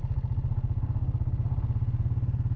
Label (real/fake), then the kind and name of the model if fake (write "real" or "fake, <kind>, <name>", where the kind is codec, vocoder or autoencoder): real